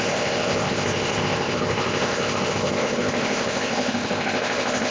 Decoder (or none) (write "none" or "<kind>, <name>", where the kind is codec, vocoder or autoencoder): codec, ZipCodec